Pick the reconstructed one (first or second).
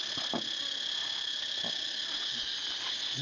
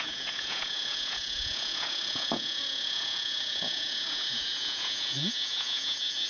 second